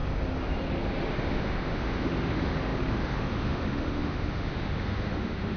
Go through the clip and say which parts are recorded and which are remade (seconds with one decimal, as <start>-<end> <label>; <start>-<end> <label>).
0.0-1.1 recorded; 1.1-5.6 remade